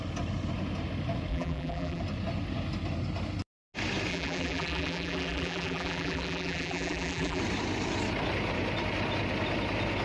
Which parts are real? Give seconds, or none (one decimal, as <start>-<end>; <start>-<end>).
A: 0.0-1.3; 2.0-4.1; 7.4-10.0